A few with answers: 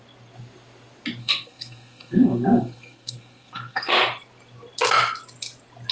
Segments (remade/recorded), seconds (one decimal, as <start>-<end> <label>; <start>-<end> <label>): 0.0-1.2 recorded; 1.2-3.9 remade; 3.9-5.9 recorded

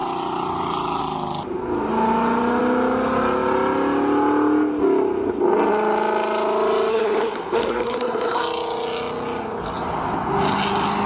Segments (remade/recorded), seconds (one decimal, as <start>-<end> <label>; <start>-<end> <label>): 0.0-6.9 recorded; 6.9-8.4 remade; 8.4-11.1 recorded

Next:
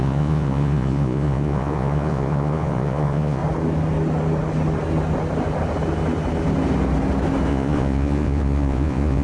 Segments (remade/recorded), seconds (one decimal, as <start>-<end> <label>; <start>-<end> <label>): 0.0-3.4 remade; 3.4-7.5 recorded; 7.5-9.2 remade

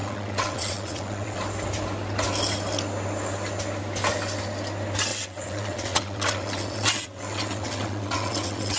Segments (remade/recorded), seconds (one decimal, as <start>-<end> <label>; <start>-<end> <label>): 0.0-1.4 remade; 1.4-5.1 recorded; 5.1-8.8 remade

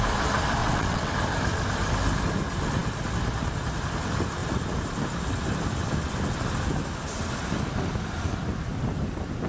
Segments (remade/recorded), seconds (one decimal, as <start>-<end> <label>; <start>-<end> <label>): 0.0-0.6 recorded; 0.6-1.1 remade; 1.1-9.5 recorded

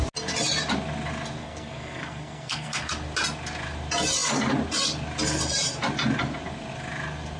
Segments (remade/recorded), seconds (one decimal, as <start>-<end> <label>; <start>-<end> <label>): 0.0-1.4 recorded; 1.4-2.9 remade; 2.9-7.4 recorded

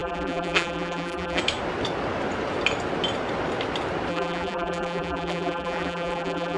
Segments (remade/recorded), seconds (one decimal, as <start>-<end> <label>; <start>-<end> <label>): 0.0-1.4 remade; 1.4-4.1 recorded; 4.1-6.6 remade

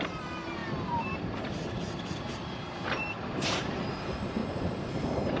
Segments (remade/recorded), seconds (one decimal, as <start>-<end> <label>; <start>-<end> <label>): 0.0-5.4 remade